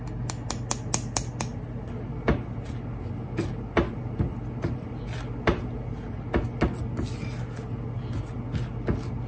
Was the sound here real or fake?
real